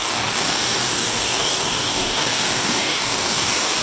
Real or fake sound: fake